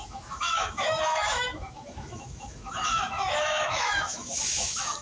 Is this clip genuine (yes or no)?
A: no